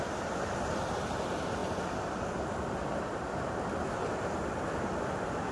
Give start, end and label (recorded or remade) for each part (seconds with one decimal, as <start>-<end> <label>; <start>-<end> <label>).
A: 0.0-5.5 recorded